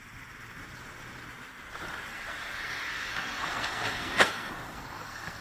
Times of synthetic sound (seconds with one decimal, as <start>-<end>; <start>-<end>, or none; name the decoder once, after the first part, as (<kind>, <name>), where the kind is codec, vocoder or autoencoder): 2.1-5.4 (codec, SNAC)